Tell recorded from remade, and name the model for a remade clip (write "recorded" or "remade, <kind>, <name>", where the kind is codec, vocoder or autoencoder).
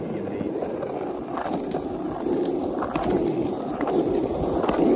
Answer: recorded